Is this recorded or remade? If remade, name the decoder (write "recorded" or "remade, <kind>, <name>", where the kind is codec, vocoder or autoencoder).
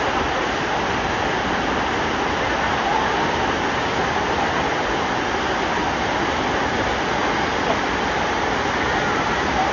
recorded